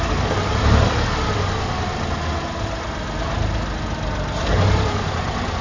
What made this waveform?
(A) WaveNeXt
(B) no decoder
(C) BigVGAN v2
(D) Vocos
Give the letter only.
B